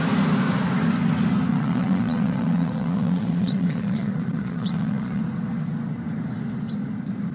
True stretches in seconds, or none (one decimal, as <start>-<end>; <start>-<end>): 0.0-1.5; 5.2-7.3